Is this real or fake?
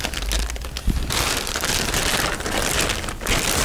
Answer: real